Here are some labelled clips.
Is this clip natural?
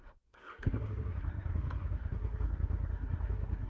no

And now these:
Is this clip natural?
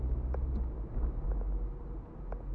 yes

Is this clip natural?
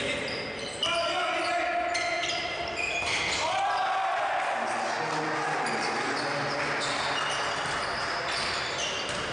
yes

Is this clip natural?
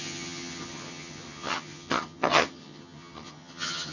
no